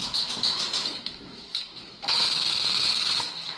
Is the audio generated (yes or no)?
yes